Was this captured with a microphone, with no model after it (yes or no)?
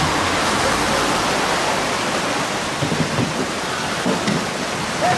yes